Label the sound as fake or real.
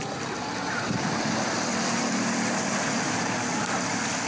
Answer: real